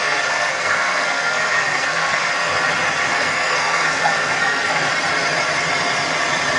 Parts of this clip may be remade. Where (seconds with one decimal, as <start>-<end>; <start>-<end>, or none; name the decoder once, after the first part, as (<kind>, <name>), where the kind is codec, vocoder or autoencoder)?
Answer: 0.0-2.3 (codec, SNAC); 3.1-4.9